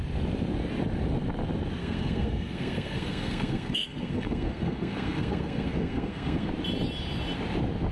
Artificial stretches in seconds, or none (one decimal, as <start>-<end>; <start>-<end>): 1.8-6.5